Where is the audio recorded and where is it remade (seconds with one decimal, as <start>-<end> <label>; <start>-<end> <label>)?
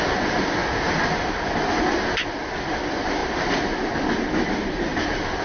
0.0-3.2 recorded; 3.2-3.9 remade; 3.9-4.9 recorded; 4.9-5.4 remade